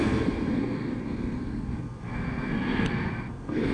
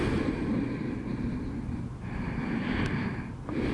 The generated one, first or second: first